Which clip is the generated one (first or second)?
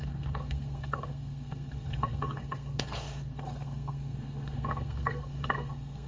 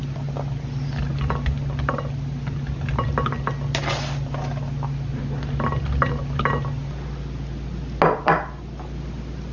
first